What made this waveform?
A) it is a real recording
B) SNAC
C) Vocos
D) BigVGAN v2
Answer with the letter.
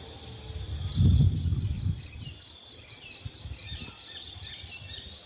A